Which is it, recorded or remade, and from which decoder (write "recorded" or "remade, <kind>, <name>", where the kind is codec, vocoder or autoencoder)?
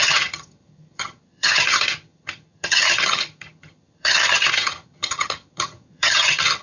remade, vocoder, HiFi-GAN